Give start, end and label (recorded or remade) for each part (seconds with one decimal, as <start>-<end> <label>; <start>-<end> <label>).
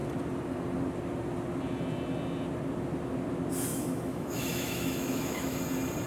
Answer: 0.0-3.7 recorded; 3.7-5.6 remade; 5.6-6.1 recorded